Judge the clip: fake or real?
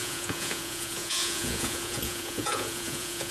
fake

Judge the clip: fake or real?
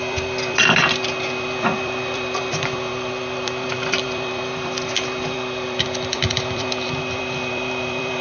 fake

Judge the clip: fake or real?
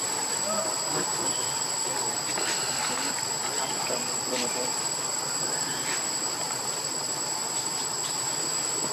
real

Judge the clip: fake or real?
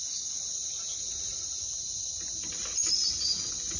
real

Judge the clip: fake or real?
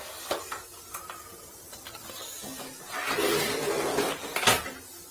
real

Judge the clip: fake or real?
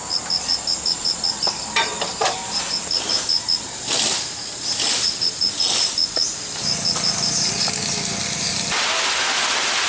real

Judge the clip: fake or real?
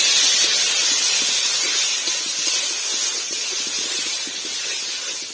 real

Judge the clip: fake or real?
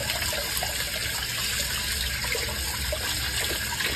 real